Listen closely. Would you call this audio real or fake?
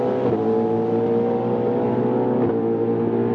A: real